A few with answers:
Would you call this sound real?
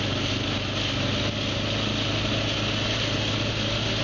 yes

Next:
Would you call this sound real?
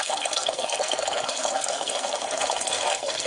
no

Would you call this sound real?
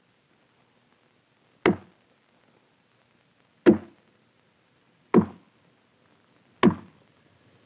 yes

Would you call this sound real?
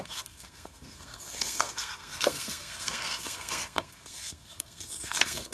no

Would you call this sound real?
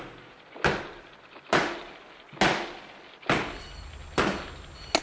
yes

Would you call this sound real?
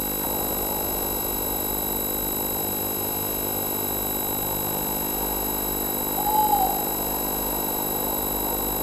yes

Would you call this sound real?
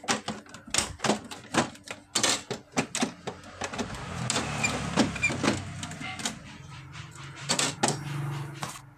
yes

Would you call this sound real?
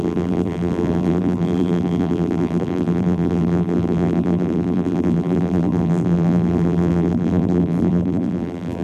no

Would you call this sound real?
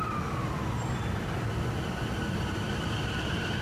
yes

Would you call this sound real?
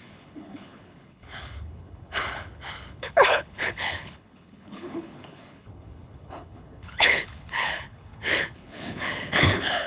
no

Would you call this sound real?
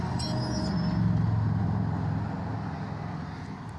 yes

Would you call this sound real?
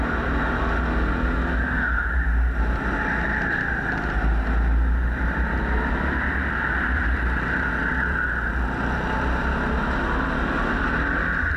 yes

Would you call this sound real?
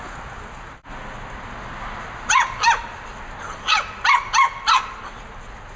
yes